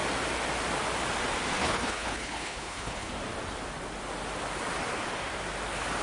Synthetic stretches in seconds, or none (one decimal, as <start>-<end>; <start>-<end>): 1.6-3.1